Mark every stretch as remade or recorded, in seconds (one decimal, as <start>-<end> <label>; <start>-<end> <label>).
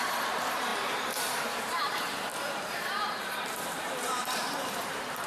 0.0-5.3 remade